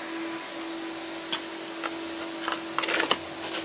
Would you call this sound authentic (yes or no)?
yes